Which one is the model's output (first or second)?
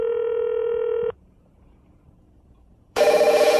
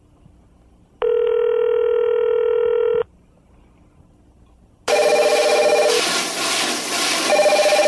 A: first